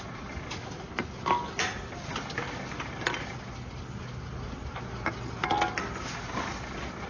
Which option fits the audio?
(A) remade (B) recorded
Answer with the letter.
B